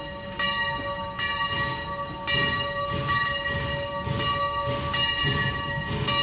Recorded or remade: recorded